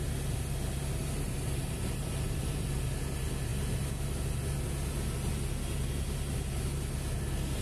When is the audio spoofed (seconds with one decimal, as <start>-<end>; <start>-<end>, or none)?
1.0-2.8